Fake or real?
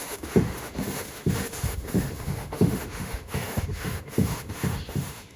fake